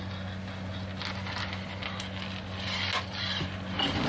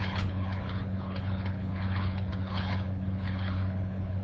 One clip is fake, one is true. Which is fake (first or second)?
second